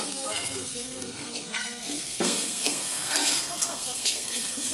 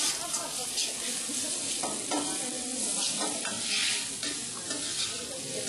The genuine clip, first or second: second